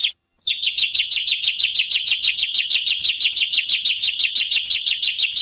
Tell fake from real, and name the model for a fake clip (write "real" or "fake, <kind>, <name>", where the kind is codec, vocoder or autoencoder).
fake, vocoder, HiFi-GAN